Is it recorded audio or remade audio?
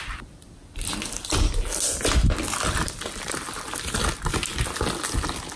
recorded